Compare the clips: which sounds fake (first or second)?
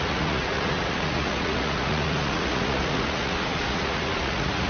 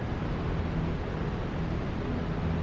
first